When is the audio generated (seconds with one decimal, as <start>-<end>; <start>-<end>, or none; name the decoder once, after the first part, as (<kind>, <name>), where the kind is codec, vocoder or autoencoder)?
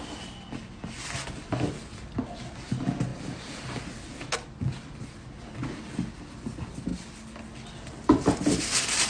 none